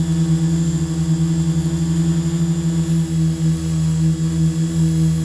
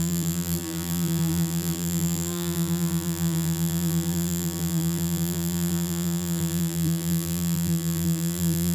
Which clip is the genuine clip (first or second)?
first